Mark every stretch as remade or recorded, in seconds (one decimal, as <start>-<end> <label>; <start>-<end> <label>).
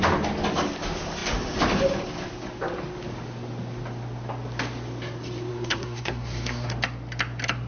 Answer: 0.0-5.5 recorded; 5.5-6.7 remade; 6.7-7.7 recorded